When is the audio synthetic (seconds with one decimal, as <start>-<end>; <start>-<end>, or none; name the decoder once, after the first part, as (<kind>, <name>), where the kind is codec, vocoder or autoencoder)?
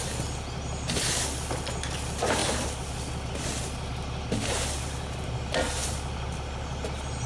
none